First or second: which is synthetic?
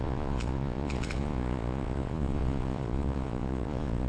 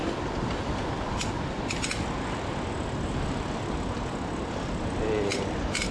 first